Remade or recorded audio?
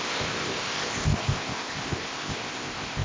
remade